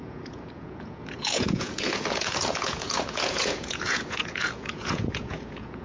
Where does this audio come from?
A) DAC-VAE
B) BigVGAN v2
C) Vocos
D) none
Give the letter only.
C